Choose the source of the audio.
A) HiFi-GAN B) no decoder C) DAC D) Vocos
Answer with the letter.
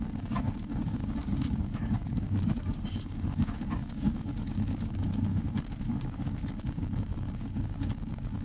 C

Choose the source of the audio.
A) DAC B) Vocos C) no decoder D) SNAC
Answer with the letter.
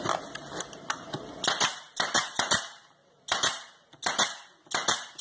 C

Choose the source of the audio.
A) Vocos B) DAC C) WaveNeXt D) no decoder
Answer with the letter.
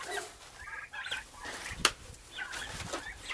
D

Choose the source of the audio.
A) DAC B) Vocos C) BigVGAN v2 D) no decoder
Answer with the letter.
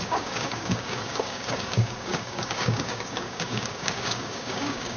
A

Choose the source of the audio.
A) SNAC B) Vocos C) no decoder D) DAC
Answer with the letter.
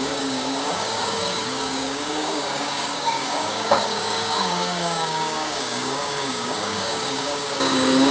D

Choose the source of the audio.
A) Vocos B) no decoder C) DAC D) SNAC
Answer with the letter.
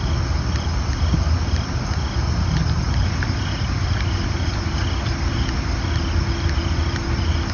B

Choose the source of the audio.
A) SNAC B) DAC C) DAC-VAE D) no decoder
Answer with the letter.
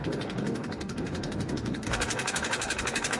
B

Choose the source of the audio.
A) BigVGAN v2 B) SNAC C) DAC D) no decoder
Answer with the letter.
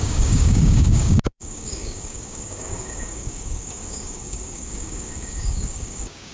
C